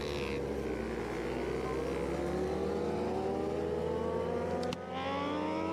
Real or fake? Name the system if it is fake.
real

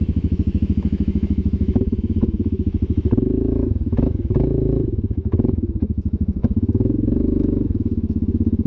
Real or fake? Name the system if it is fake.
fake, autoencoder, DAC-VAE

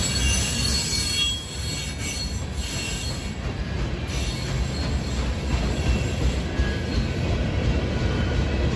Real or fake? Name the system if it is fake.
real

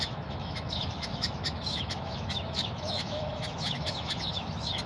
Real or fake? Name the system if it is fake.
fake, autoencoder, DAC-VAE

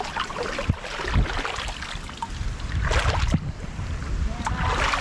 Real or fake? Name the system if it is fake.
real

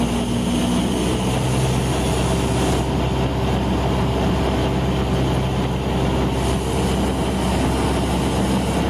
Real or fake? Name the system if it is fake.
real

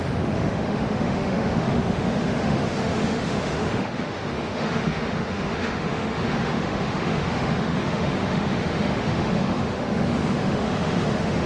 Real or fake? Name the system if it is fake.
fake, autoencoder, DAC-VAE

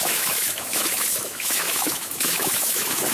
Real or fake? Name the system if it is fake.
fake, autoencoder, DAC-VAE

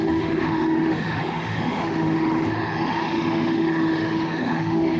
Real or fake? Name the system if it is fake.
fake, autoencoder, DAC-VAE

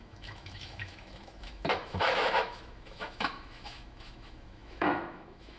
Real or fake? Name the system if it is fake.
fake, autoencoder, DAC-VAE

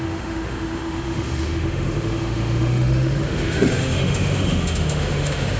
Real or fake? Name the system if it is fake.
fake, autoencoder, DAC-VAE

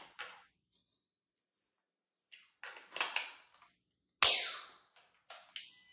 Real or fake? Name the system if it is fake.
real